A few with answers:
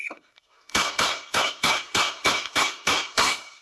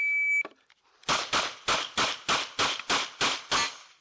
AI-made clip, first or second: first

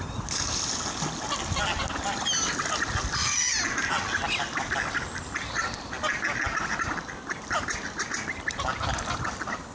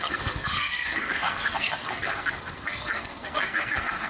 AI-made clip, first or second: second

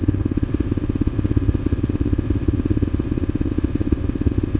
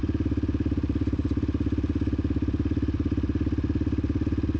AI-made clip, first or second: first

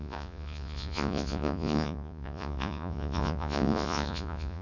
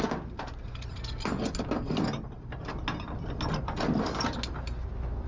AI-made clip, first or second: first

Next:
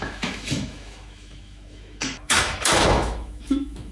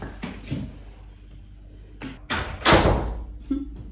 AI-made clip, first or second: first